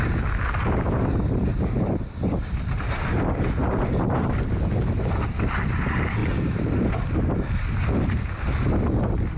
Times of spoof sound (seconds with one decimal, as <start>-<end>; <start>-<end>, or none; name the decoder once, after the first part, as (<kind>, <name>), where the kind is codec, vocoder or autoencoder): 1.5-3.2 (vocoder, BigVGAN v2); 3.6-4.4